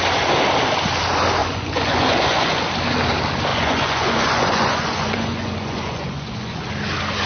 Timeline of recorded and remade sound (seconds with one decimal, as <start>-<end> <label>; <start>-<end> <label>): 0.0-1.4 recorded; 1.4-2.6 remade; 2.6-3.5 recorded; 3.5-6.7 remade; 6.7-7.3 recorded